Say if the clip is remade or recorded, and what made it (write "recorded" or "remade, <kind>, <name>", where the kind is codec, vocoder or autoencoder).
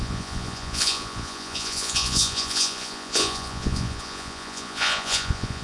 remade, vocoder, Vocos